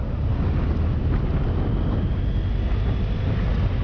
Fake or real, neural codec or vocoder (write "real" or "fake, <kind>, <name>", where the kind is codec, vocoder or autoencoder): real